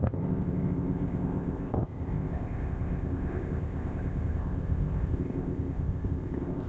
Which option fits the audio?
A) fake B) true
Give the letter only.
A